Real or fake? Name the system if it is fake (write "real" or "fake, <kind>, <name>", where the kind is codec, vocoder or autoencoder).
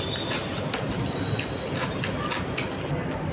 real